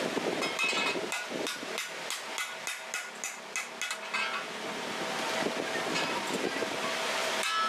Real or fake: real